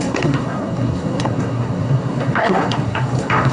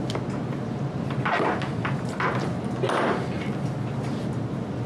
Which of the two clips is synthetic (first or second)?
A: first